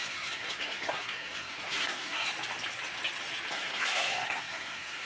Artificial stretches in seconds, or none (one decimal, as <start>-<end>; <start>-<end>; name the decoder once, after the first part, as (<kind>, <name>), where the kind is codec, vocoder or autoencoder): 0.0-2.3 (codec, SNAC); 3.5-5.1

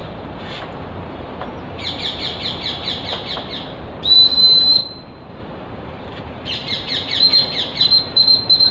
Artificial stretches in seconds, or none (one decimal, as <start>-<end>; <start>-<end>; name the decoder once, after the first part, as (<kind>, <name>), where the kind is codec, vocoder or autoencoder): 0.0-4.8 (vocoder, BigVGAN v2); 5.4-8.7

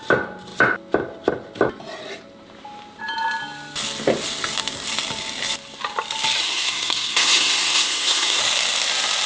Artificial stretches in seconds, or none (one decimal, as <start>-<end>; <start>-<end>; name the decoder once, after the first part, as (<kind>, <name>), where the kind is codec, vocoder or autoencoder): 6.4-8.4 (codec, SNAC)

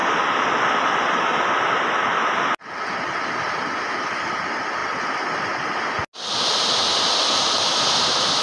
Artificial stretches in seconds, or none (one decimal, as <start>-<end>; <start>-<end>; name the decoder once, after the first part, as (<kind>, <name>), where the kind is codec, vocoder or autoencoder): none

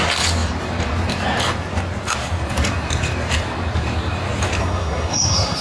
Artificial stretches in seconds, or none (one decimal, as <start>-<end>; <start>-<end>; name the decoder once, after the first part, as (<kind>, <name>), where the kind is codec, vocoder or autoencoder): 4.6-5.6 (codec, SNAC)

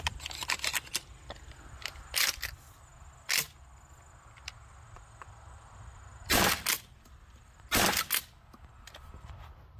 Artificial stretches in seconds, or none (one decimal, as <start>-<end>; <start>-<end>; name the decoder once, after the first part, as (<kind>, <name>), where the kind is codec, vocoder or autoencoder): none

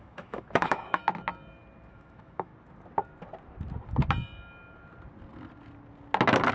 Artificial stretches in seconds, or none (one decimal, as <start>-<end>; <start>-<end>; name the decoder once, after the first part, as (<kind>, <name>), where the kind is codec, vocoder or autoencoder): 0.0-1.0 (autoencoder, DAC-VAE); 1.9-2.5

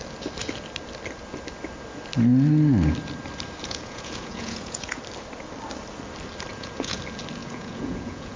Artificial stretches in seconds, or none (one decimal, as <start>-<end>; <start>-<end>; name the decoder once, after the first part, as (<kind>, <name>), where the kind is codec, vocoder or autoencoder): 3.6-5.0 (vocoder, Vocos); 6.5-7.0; 7.4-8.4